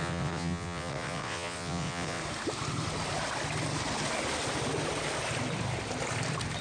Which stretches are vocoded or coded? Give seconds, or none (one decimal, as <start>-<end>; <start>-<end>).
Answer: 0.0-2.2